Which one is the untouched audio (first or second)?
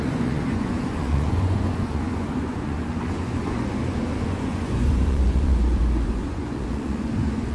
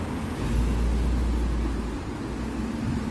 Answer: second